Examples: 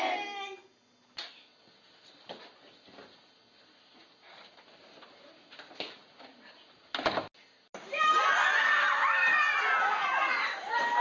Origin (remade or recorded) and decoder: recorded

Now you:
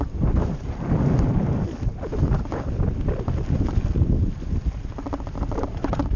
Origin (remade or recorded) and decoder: recorded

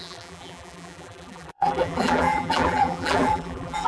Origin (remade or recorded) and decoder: remade, vocoder, BigVGAN v2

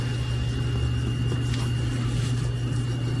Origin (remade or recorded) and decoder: recorded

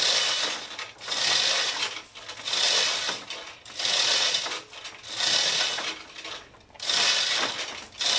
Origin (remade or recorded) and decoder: recorded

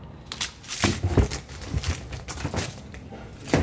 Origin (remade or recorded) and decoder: recorded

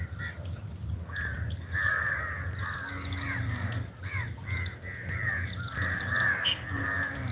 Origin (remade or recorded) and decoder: recorded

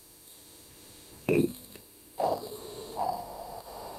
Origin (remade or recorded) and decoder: remade, autoencoder, DAC-VAE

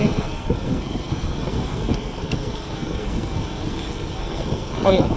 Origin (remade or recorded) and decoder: remade, codec, SNAC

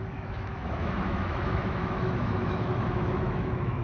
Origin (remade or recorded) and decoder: remade, autoencoder, DAC-VAE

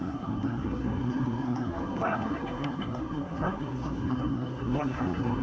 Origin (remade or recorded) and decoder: remade, codec, SNAC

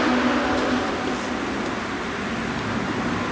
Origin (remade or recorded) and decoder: recorded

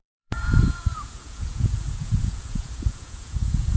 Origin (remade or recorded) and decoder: remade, vocoder, Vocos